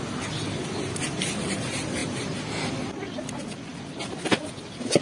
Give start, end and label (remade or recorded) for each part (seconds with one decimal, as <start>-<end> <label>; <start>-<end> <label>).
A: 0.0-5.0 recorded